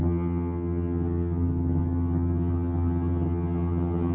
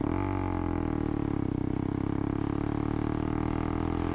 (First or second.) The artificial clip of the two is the first